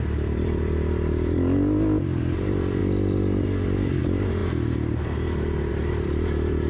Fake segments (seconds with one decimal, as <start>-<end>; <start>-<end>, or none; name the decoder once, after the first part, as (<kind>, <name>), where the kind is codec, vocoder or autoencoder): 0.0-2.8 (vocoder, BigVGAN v2); 4.0-4.4; 5.7-6.7